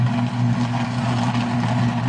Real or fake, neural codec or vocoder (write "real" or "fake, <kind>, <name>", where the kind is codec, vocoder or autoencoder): real